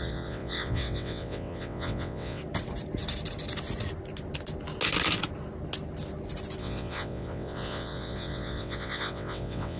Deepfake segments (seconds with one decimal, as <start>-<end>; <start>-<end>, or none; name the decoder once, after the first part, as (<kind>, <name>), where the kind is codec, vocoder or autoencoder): 0.0-2.4 (vocoder, WaveNeXt); 6.6-9.8